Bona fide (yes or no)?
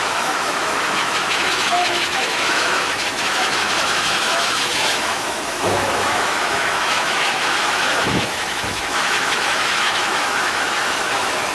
no